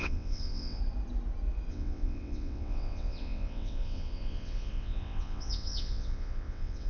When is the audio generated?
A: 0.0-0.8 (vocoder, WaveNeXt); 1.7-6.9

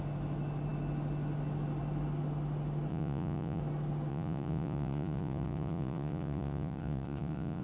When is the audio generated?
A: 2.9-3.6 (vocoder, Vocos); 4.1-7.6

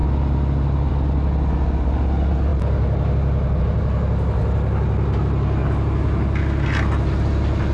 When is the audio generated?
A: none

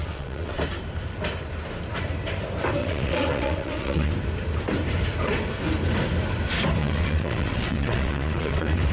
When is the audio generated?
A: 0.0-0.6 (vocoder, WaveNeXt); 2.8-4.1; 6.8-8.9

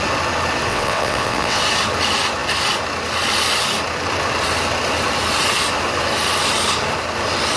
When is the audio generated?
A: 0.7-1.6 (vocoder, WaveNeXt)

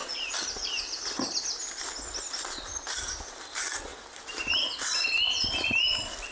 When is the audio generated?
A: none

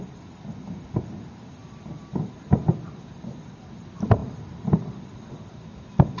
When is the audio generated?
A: 1.6-2.3 (vocoder, BigVGAN v2); 4.2-5.3